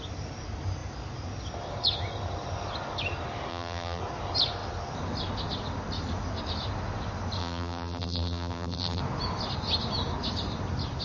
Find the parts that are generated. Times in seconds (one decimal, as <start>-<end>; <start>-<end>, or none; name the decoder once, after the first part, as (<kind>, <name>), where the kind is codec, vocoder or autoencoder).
3.5-4.0 (vocoder, BigVGAN v2); 7.4-9.0